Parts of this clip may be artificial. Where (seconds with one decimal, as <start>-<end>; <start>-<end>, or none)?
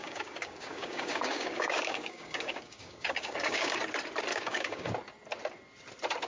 0.0-3.8; 4.3-4.9